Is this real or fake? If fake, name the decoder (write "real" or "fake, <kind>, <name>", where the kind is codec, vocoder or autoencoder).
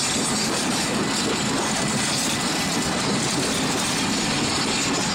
real